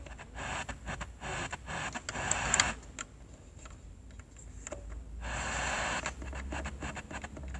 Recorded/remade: recorded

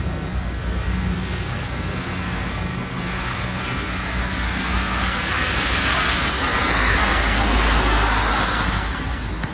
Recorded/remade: remade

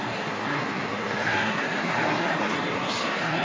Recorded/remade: remade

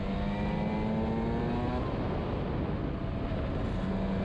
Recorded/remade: recorded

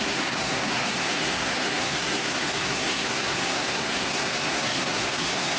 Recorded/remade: remade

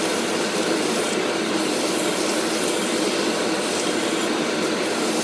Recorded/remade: recorded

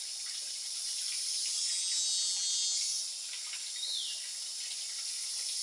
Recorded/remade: recorded